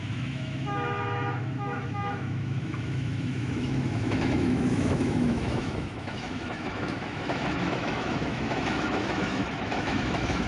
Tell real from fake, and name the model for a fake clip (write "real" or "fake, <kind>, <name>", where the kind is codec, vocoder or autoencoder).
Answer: fake, autoencoder, DAC-VAE